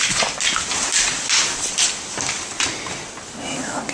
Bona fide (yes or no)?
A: yes